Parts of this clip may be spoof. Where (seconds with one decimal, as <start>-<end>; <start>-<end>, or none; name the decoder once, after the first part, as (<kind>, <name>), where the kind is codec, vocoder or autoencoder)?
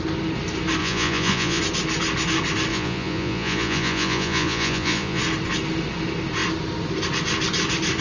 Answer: 0.8-1.6 (vocoder, Vocos); 2.7-5.2